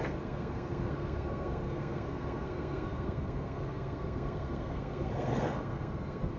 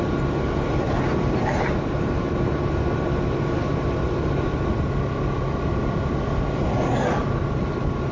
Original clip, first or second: second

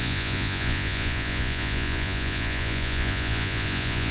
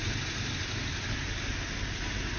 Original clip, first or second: second